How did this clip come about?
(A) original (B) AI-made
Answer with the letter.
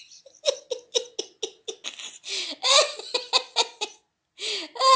A